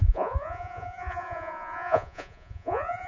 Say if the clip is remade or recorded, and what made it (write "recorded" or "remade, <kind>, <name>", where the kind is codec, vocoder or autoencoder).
remade, vocoder, Vocos